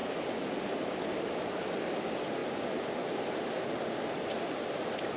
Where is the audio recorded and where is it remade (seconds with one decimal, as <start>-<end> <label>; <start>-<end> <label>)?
0.0-0.6 recorded; 0.6-2.4 remade; 2.4-4.6 recorded; 4.6-5.2 remade